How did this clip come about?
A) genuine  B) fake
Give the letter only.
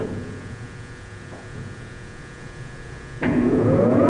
B